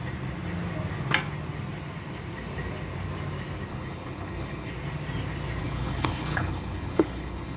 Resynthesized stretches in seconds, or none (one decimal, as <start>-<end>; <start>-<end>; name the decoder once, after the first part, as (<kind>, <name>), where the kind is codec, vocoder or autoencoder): 3.7-4.7 (codec, HILCodec); 5.6-7.6